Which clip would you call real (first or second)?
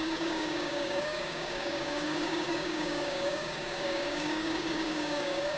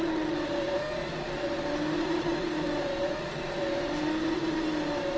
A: second